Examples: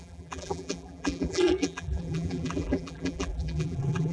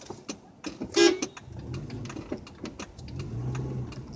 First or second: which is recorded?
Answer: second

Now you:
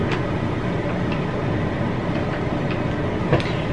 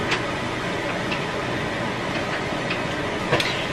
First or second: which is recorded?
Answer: first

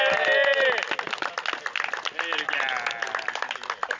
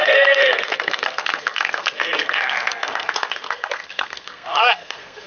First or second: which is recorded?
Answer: first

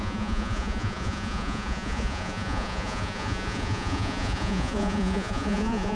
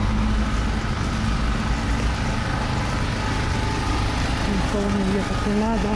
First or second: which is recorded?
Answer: second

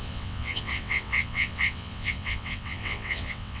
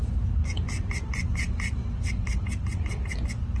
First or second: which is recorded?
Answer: second